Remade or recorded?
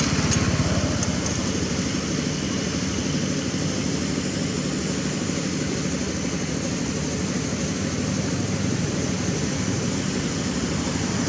recorded